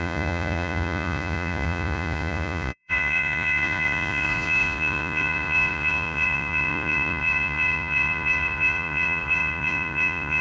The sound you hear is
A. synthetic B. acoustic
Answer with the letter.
A